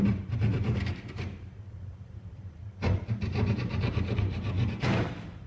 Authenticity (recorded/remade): remade